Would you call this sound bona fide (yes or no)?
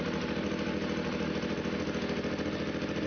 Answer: yes